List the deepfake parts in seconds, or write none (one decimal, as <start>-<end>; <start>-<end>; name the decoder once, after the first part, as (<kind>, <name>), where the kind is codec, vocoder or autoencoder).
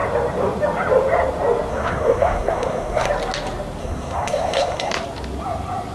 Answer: 1.7-3.1 (codec, SNAC); 3.8-4.9